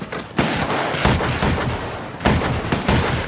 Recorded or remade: recorded